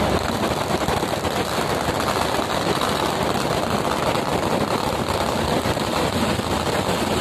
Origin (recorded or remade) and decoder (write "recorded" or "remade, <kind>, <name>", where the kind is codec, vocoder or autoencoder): recorded